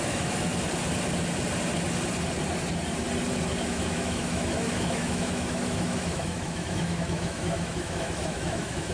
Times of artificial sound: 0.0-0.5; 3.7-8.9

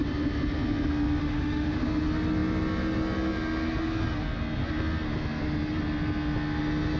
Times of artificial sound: 1.2-1.8

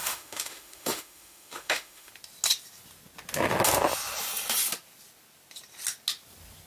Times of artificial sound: 0.0-2.1

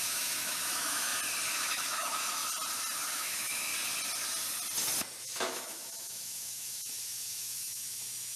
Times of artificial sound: 0.0-1.1; 1.6-2.4; 3.1-3.7; 5.2-8.4

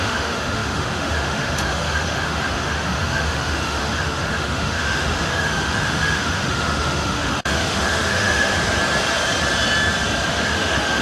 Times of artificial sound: 0.0-8.5; 10.3-11.0

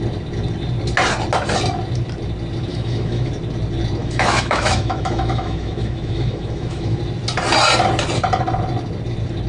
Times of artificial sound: 2.7-3.3; 4.0-7.0

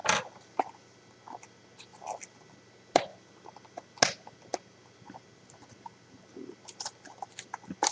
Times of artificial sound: none

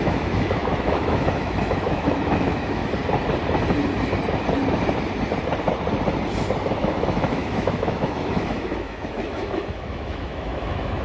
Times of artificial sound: 0.0-2.8; 6.8-11.0